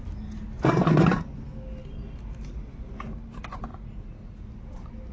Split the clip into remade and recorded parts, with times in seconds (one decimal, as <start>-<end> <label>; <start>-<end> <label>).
0.0-3.7 recorded; 3.7-4.5 remade; 4.5-5.1 recorded